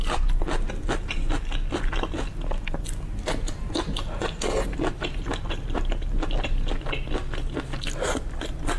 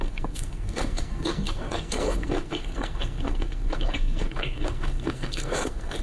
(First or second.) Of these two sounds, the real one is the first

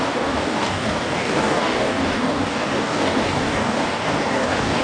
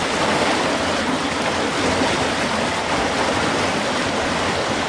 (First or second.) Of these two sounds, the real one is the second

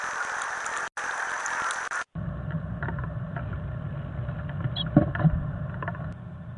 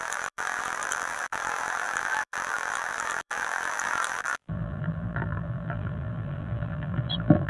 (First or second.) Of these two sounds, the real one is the first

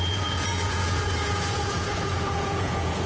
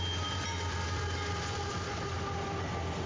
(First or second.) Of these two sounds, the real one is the second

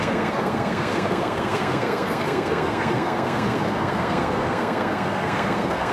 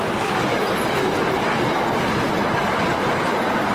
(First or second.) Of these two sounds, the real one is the second